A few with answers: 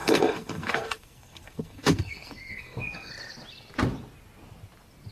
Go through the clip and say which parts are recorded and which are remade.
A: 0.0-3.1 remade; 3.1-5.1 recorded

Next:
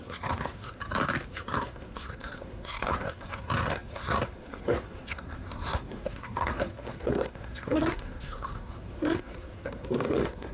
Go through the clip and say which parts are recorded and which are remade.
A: 0.0-0.8 remade; 0.8-1.3 recorded; 1.3-10.5 remade

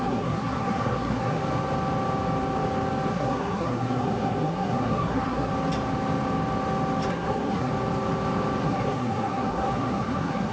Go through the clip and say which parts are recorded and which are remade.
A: 0.0-1.4 remade; 1.4-3.1 recorded; 3.1-5.5 remade; 5.5-7.1 recorded; 7.1-7.7 remade; 7.7-8.6 recorded; 8.6-10.5 remade